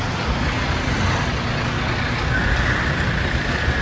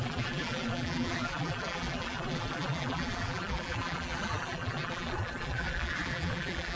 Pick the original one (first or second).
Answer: first